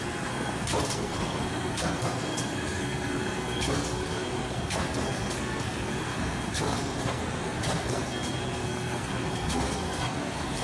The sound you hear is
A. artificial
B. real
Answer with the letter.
A